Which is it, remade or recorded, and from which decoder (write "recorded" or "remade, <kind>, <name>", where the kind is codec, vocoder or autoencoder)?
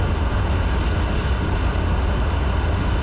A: recorded